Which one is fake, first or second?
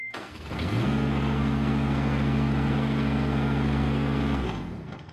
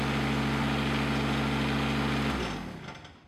first